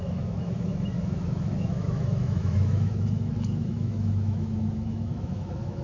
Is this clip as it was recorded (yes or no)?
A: no